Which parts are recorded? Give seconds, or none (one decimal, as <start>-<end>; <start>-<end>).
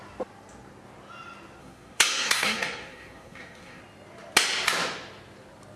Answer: 0.0-1.6; 3.8-5.8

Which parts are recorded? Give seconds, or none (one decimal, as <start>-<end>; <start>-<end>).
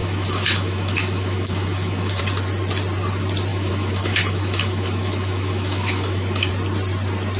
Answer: 2.2-3.5; 6.5-7.4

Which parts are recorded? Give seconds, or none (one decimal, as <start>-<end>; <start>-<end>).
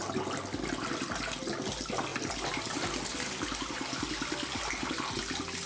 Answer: 0.0-5.7